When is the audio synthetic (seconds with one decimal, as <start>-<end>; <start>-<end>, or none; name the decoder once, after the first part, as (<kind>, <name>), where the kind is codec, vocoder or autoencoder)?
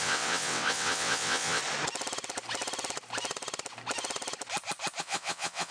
0.0-1.6 (vocoder, WaveNeXt); 5.0-5.7